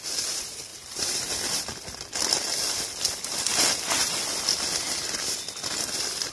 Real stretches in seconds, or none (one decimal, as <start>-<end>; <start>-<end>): 0.0-0.7; 1.2-6.3